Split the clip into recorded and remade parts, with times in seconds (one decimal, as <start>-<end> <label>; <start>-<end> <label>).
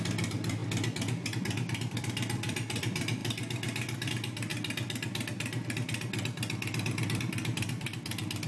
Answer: 0.0-0.6 remade; 0.6-1.9 recorded; 1.9-4.5 remade; 4.5-7.2 recorded; 7.2-8.5 remade